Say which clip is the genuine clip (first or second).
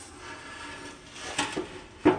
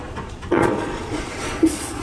first